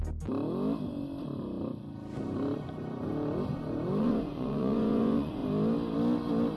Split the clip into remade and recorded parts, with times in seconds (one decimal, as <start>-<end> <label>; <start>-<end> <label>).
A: 0.0-4.0 recorded; 4.0-5.4 remade; 5.4-6.6 recorded